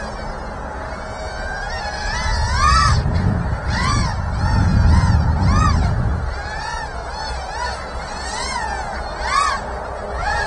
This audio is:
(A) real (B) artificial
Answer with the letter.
A